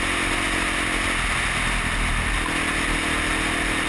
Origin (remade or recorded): recorded